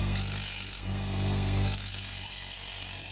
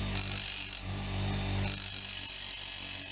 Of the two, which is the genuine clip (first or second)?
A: second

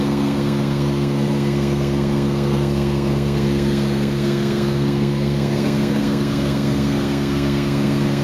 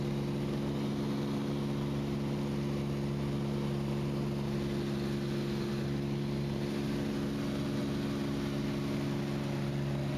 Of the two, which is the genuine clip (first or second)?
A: second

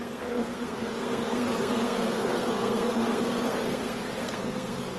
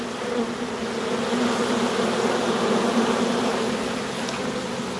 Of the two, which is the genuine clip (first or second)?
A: second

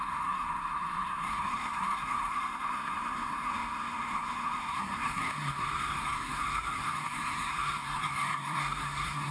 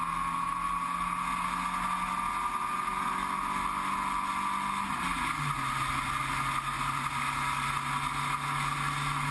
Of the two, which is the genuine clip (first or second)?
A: second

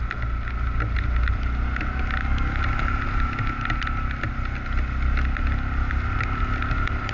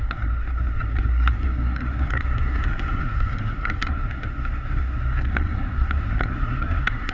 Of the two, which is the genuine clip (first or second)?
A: first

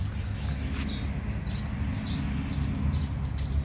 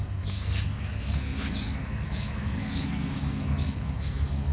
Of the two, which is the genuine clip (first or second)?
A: first